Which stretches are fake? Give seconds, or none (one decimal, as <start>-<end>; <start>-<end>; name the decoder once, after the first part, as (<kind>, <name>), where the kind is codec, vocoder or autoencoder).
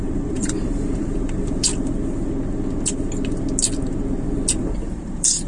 0.0-1.7 (vocoder, BigVGAN v2); 4.6-5.5